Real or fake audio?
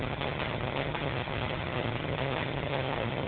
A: fake